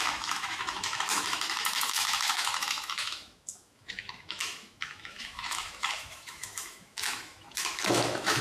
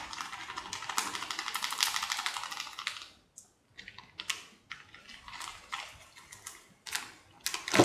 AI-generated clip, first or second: first